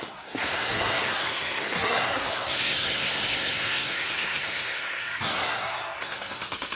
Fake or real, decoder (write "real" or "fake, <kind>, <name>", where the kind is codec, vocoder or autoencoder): fake, codec, SNAC